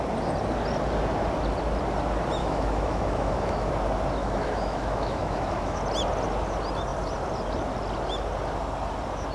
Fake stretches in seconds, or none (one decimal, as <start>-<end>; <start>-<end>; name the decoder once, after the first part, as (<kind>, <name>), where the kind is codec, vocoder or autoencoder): 2.4-3.7 (autoencoder, DAC-VAE); 4.2-5.8